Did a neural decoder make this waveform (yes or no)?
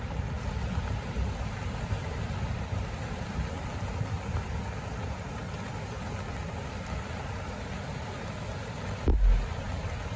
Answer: no